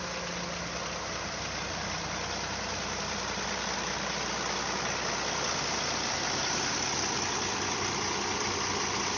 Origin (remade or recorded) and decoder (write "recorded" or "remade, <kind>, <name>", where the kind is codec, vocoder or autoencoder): recorded